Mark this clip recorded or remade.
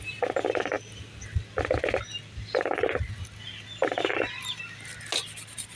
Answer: recorded